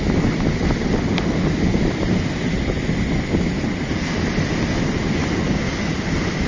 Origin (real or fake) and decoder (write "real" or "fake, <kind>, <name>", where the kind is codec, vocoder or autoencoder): real